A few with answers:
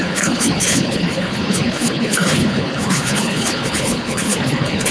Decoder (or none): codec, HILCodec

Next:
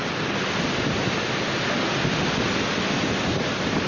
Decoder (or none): none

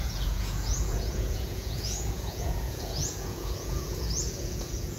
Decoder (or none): vocoder, Vocos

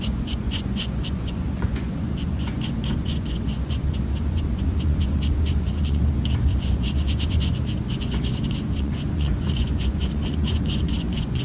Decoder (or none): vocoder, Vocos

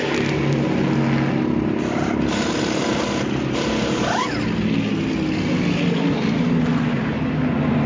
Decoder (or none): none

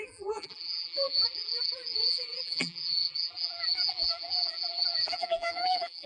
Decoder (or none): vocoder, BigVGAN v2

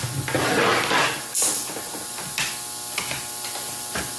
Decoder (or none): none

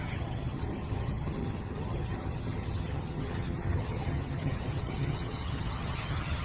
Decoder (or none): vocoder, HiFi-GAN